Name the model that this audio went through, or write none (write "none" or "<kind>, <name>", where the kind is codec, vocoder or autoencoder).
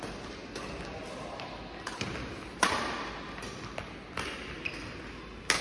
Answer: none